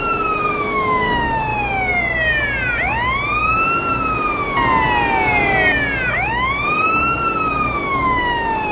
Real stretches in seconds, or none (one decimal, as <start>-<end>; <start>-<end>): 1.5-6.1

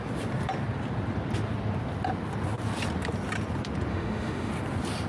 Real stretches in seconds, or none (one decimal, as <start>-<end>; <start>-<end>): 0.0-3.9; 4.5-5.1

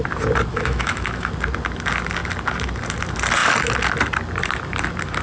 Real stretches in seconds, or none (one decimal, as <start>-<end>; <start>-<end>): 0.0-0.5; 1.3-5.2

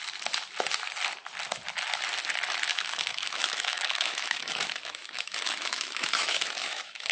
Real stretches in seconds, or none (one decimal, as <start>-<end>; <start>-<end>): 0.0-2.7

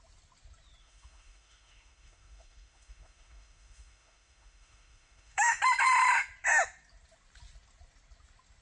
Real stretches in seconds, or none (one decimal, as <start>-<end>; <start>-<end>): 0.0-0.8; 5.6-8.6

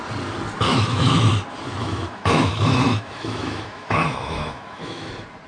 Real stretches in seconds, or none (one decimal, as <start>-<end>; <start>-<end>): 0.0-0.7; 1.3-1.8; 5.1-5.5

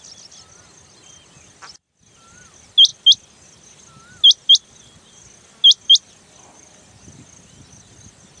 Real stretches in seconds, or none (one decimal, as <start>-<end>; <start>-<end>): 0.0-8.4